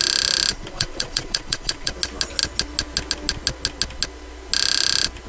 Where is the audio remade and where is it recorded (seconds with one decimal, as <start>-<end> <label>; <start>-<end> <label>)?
0.0-0.5 recorded; 0.5-1.9 remade; 1.9-5.3 recorded